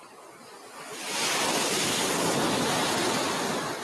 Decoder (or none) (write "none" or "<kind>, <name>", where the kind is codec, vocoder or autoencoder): none